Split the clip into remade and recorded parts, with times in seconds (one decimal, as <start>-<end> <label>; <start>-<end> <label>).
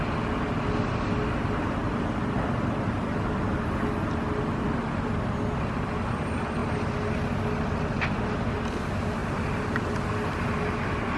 0.0-11.2 recorded